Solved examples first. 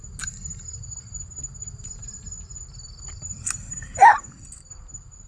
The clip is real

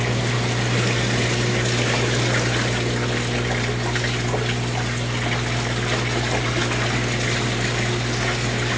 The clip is real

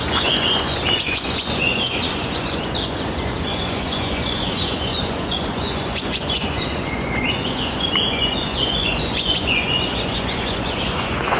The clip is fake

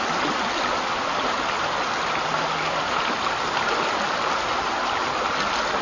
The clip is real